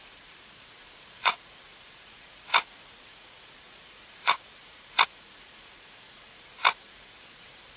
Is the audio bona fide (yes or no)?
no